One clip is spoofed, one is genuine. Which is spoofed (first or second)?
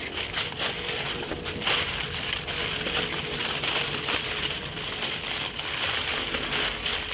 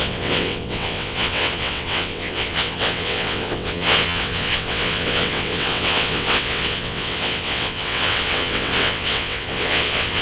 second